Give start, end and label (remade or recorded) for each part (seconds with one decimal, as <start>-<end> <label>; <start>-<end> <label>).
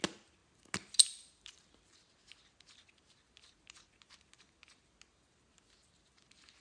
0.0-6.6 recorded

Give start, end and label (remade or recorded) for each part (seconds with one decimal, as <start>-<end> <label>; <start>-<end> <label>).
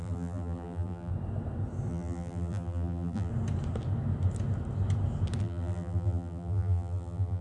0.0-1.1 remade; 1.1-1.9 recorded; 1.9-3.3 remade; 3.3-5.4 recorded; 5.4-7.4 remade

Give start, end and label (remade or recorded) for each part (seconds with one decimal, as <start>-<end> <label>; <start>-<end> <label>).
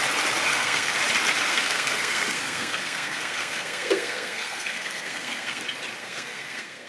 0.0-0.5 recorded; 0.5-1.0 remade; 1.0-1.5 recorded; 1.5-5.6 remade; 5.6-6.0 recorded; 6.0-6.9 remade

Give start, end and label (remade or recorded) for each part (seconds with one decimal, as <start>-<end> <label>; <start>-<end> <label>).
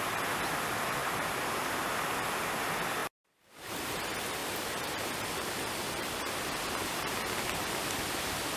0.0-1.0 recorded; 1.0-1.7 remade; 1.7-3.0 recorded; 3.0-3.7 remade; 3.7-4.4 recorded; 4.4-7.7 remade; 7.7-8.6 recorded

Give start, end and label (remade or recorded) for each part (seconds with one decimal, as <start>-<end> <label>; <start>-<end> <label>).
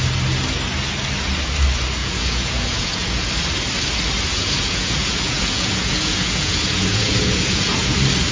0.0-2.0 recorded; 2.0-3.3 remade; 3.3-4.3 recorded; 4.3-7.9 remade; 7.9-8.3 recorded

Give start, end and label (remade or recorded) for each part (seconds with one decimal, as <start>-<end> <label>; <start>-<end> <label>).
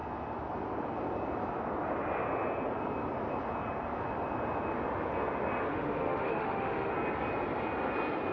0.0-5.7 recorded; 5.7-6.9 remade; 6.9-8.3 recorded